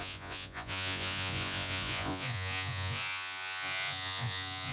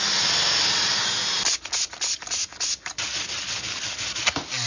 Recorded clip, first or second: second